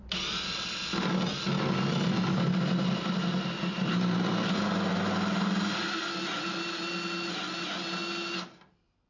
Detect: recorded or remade recorded